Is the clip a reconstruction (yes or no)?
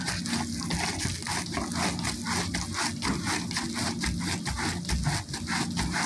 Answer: no